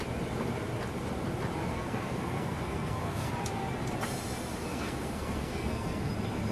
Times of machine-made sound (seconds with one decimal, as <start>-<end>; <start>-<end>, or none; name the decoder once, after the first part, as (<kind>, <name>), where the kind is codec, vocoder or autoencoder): 1.7-3.3 (codec, SNAC); 4.7-6.1